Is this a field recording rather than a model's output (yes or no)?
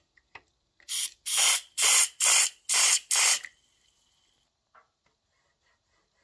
yes